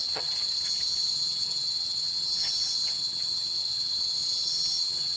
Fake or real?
fake